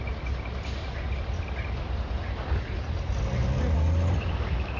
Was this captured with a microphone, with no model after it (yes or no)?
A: yes